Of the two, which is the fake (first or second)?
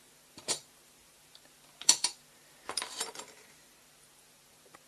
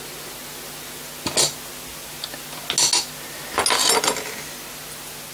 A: first